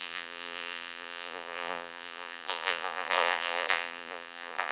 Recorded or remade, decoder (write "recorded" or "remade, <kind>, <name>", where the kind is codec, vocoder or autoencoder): remade, vocoder, BigVGAN v2